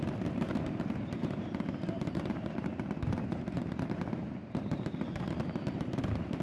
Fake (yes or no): yes